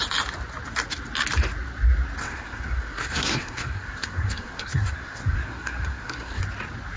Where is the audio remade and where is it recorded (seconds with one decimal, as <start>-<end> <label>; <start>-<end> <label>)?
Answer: 0.0-2.2 recorded; 2.2-6.4 remade; 6.4-7.0 recorded